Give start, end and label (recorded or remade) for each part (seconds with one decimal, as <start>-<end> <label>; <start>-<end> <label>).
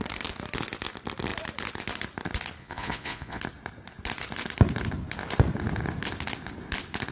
0.0-2.6 recorded; 2.6-3.4 remade; 3.4-7.1 recorded